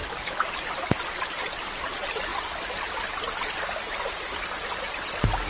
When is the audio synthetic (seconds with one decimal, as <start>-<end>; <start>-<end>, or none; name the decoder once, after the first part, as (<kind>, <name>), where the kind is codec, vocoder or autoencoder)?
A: none